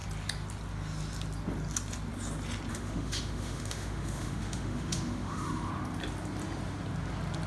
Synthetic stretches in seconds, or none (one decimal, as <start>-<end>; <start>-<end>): 2.7-5.7